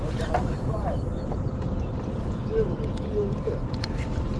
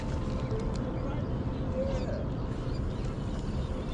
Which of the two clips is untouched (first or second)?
second